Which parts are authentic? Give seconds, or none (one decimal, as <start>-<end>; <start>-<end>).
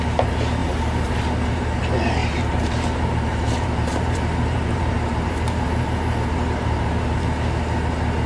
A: 0.0-0.6; 1.8-2.2; 7.2-8.3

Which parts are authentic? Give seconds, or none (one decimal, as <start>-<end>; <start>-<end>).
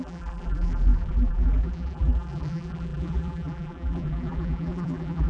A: none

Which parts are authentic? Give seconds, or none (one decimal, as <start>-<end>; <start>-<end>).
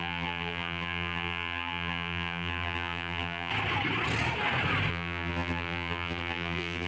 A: 3.5-4.9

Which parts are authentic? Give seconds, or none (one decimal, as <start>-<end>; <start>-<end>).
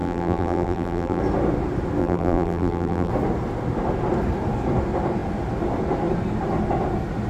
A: 1.2-2.0; 3.1-7.3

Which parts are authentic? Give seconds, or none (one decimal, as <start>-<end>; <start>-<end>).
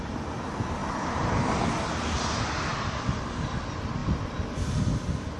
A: 0.0-0.8; 1.6-5.4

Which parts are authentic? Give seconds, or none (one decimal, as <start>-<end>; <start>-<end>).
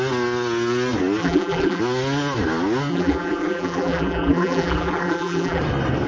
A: 0.0-1.2; 1.8-2.9; 5.6-6.1